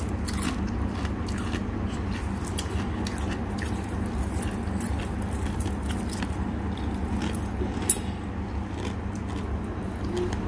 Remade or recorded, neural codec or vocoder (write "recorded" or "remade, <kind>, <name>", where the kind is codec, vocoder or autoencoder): recorded